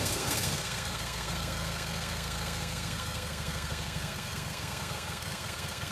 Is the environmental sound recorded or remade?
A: remade